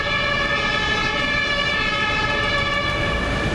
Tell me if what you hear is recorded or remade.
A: recorded